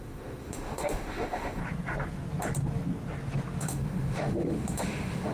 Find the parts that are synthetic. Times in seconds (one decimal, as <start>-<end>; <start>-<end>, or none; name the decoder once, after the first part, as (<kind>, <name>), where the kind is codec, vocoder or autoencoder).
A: 0.0-1.6 (autoencoder, DAC-VAE); 3.6-5.3